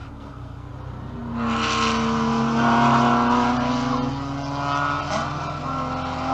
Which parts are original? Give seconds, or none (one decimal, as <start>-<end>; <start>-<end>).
0.7-6.3